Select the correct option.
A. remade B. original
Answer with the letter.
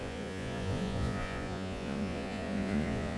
A